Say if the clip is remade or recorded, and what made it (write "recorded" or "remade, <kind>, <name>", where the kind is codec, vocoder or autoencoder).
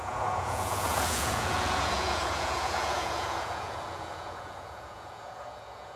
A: remade, vocoder, Vocos